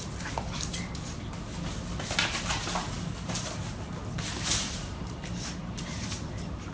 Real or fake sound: real